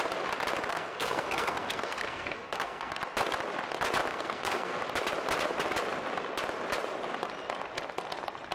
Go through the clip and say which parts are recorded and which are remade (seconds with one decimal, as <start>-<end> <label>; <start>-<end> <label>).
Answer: 0.0-0.7 recorded; 0.7-3.0 remade; 3.0-4.1 recorded; 4.1-4.8 remade; 4.8-8.5 recorded